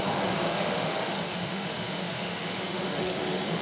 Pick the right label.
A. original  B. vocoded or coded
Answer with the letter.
B